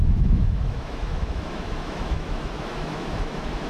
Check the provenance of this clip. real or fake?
fake